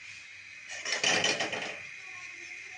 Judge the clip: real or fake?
real